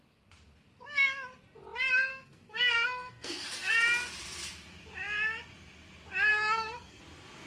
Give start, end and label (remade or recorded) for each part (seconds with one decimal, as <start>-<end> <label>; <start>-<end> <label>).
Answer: 0.0-2.1 recorded; 2.1-3.7 remade; 3.7-6.3 recorded; 6.3-7.0 remade; 7.0-7.5 recorded